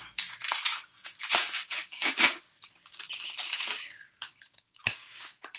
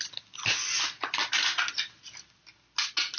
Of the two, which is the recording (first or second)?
second